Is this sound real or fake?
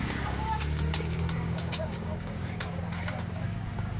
fake